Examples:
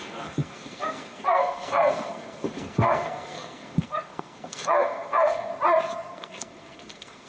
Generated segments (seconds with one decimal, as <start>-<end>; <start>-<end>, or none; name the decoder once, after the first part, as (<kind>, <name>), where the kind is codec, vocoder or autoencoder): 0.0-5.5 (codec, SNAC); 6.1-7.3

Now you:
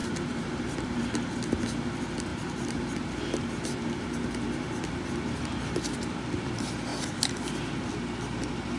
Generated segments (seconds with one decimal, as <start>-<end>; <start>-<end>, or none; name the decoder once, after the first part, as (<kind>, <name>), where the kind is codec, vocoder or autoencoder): 0.0-1.0 (vocoder, BigVGAN v2); 2.3-5.2

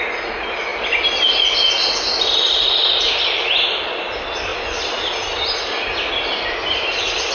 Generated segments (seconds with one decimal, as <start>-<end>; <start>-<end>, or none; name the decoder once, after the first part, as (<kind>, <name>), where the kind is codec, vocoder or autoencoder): none

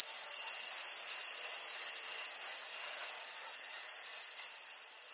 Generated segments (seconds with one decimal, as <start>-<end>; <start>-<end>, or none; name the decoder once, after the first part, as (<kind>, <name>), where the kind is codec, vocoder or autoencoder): none

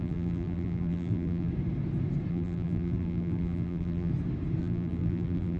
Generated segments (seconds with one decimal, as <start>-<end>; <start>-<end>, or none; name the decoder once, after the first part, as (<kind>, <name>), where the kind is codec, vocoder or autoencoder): 0.0-1.5 (vocoder, BigVGAN v2); 2.3-4.1; 4.6-5.6

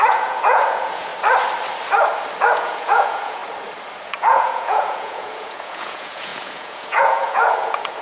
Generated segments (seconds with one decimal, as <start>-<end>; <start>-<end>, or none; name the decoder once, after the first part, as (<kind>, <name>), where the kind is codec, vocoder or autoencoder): 0.0-1.1 (vocoder, Vocos); 2.4-3.4; 4.0-8.0

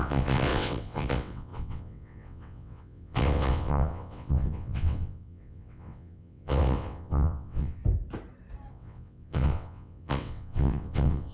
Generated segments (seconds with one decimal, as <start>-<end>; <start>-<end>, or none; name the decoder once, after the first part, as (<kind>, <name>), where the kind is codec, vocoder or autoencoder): 0.0-7.8 (vocoder, WaveNeXt); 8.7-11.3

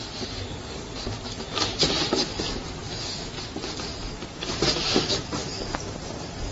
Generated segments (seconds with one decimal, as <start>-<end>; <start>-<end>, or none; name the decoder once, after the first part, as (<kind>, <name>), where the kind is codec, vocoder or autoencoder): none